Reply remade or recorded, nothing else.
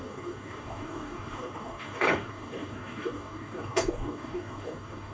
remade